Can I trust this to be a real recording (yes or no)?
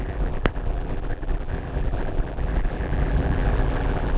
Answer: no